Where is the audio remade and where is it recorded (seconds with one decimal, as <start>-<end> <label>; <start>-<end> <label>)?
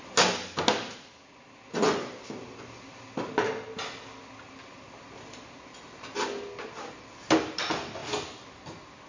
0.0-9.1 recorded